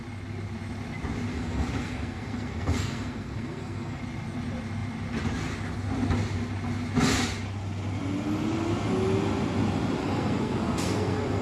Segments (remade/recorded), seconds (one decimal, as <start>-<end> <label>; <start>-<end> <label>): 0.0-1.3 recorded; 1.3-4.0 remade; 4.0-10.0 recorded; 10.0-11.4 remade